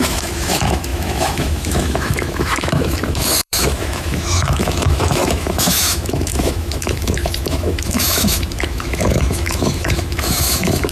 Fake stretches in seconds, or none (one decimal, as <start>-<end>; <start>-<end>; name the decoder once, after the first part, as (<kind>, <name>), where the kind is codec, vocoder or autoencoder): 0.0-10.9 (autoencoder, DAC-VAE)